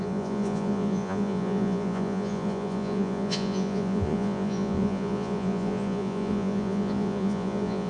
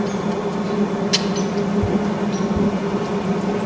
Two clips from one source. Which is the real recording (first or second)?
second